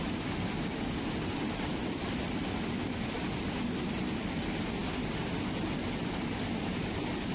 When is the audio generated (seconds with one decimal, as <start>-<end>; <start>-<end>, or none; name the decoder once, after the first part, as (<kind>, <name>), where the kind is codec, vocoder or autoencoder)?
none